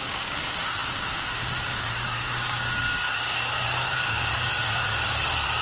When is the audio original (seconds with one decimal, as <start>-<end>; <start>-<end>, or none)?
none